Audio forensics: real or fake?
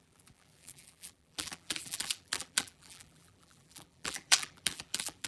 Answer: fake